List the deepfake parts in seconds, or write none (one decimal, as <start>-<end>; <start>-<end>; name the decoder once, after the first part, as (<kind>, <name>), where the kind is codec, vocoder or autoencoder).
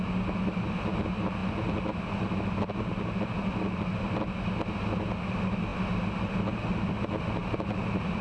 none